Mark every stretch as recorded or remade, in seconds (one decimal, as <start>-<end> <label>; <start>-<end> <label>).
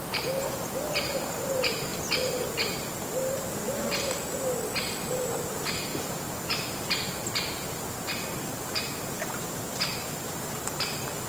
0.0-1.9 remade; 1.9-5.1 recorded; 5.1-11.3 remade